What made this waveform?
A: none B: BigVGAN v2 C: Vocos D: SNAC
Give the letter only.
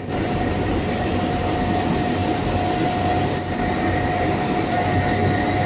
A